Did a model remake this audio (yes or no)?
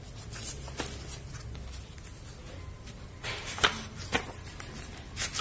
no